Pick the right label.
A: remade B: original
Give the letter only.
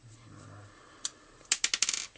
B